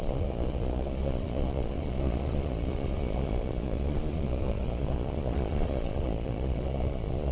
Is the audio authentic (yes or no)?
no